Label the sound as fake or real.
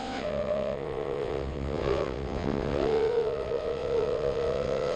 fake